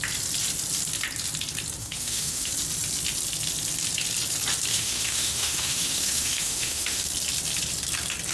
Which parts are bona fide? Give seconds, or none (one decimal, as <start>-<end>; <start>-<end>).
0.0-1.8; 2.5-4.7; 7.0-8.3